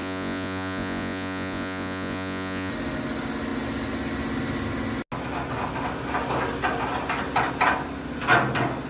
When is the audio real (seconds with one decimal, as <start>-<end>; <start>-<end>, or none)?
2.7-8.9